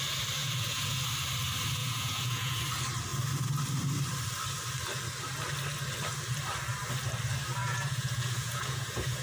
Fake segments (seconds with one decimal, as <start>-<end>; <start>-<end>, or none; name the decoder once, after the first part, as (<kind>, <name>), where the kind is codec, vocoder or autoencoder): 0.4-1.0 (vocoder, Vocos); 1.8-2.6; 7.6-9.2